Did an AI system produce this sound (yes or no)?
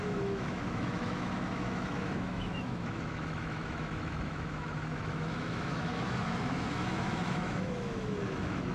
yes